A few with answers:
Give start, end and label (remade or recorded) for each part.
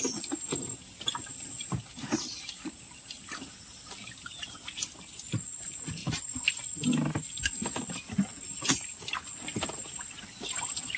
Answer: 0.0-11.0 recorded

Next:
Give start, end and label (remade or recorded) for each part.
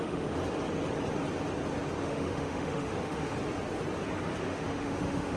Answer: 0.0-0.4 remade; 0.4-2.0 recorded; 2.0-3.3 remade; 3.3-4.4 recorded; 4.4-5.4 remade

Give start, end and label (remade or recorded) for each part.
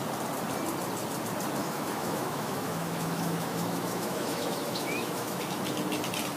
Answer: 0.0-1.6 recorded; 1.6-5.4 remade; 5.4-6.4 recorded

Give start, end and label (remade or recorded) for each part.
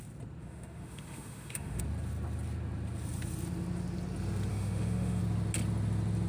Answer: 0.0-0.4 recorded; 0.4-1.8 remade; 1.8-4.5 recorded; 4.5-5.2 remade; 5.2-6.3 recorded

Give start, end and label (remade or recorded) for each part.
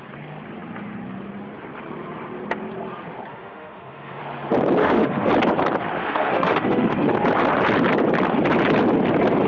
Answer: 0.0-3.3 recorded; 3.3-4.2 remade; 4.2-4.8 recorded; 4.8-5.3 remade; 5.3-6.0 recorded; 6.0-7.1 remade; 7.1-9.5 recorded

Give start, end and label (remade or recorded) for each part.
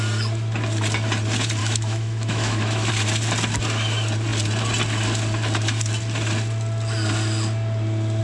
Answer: 0.0-1.6 recorded; 1.6-2.9 remade; 2.9-8.2 recorded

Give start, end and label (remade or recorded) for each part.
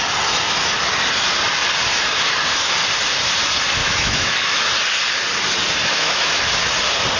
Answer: 0.0-3.8 recorded; 3.8-4.7 remade; 4.7-5.8 recorded; 5.8-6.4 remade; 6.4-7.2 recorded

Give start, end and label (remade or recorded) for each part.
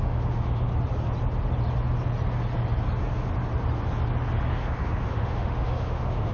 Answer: 0.0-0.7 remade; 0.7-4.5 recorded; 4.5-6.3 remade